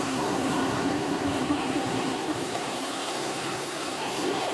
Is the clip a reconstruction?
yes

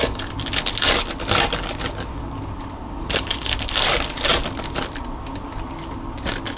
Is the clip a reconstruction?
no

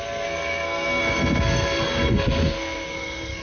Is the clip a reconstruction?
yes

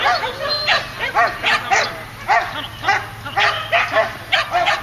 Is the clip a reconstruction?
no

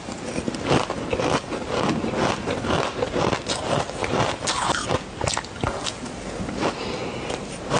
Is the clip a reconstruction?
no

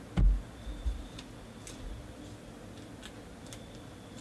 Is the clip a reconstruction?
no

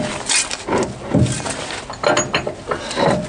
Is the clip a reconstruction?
no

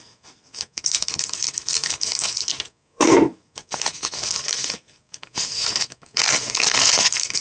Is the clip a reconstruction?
yes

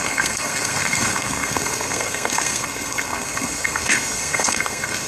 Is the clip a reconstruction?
yes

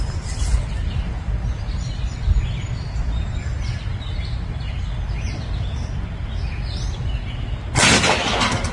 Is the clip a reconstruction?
no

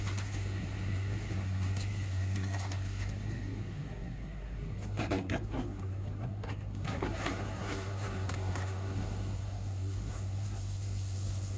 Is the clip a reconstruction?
yes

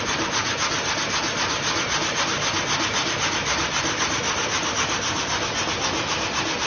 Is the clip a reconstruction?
no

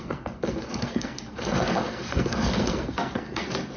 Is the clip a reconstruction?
yes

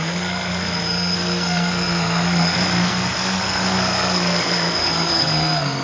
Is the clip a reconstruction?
yes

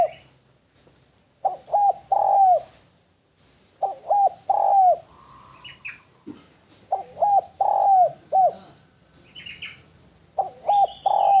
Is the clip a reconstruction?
no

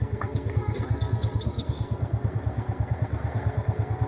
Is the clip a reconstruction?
yes